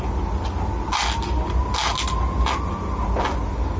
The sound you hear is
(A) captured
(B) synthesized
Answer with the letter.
A